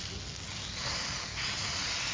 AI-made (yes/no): no